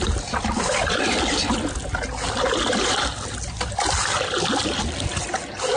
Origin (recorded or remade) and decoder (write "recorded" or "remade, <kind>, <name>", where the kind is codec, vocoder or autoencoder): recorded